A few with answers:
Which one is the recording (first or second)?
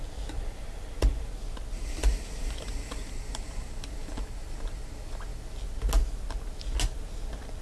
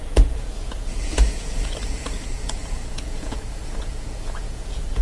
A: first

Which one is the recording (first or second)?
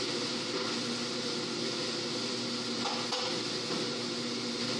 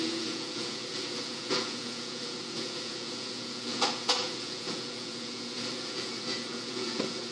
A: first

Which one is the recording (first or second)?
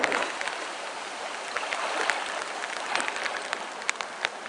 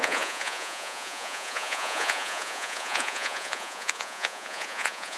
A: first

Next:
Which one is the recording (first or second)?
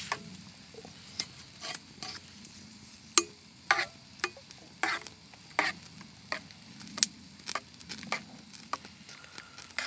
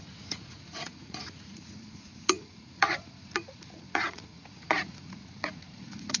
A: first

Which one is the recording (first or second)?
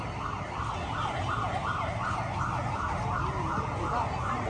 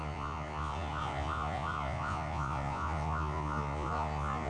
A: first